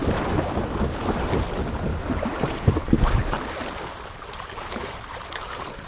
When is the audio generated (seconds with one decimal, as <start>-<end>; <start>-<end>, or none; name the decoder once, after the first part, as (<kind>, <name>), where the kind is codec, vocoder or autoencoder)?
0.0-0.6 (vocoder, BigVGAN v2); 1.9-5.4